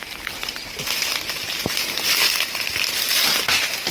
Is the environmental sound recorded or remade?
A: recorded